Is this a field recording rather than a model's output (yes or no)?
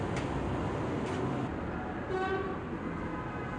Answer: yes